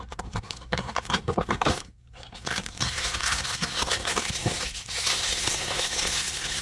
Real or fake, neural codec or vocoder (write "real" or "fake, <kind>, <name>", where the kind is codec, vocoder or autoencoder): fake, codec, SNAC